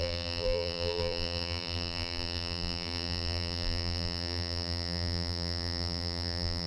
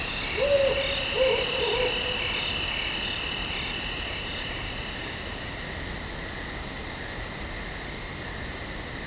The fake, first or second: first